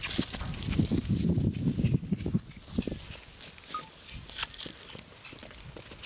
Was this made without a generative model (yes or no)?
yes